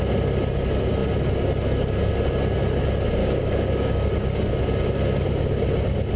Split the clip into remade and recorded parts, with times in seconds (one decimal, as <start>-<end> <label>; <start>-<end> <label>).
0.0-3.2 recorded; 3.2-4.5 remade; 4.5-6.2 recorded